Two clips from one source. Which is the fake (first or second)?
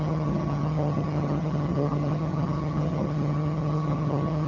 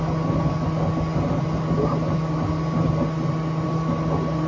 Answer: first